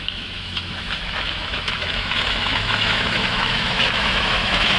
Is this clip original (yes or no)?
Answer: no